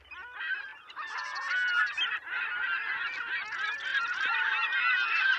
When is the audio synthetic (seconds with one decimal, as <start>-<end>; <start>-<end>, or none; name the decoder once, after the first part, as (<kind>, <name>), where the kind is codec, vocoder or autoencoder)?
3.9-4.8 (vocoder, BigVGAN v2)